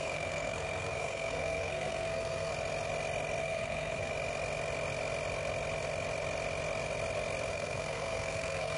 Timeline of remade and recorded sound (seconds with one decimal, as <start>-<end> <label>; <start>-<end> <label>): 0.0-2.5 remade; 2.5-3.4 recorded; 3.4-4.1 remade; 4.1-7.5 recorded; 7.5-8.8 remade